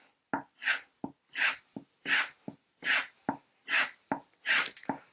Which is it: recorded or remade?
recorded